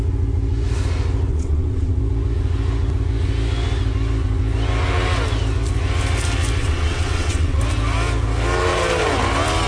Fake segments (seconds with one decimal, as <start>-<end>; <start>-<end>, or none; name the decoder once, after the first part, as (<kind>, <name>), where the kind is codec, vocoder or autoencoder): 1.3-2.0 (vocoder, WaveNeXt); 6.6-7.6